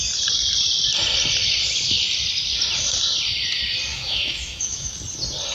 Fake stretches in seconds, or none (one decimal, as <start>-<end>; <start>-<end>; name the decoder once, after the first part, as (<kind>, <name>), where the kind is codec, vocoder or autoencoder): 3.9-4.9 (autoencoder, DAC-VAE)